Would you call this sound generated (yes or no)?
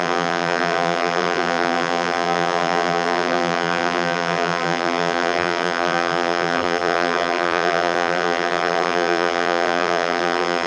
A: yes